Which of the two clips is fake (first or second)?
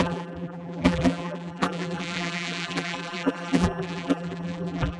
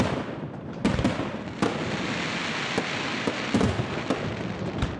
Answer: first